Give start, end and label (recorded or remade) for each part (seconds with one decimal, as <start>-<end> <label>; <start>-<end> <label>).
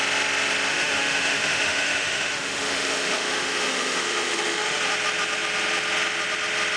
0.0-0.7 recorded; 0.7-4.8 remade; 4.8-6.8 recorded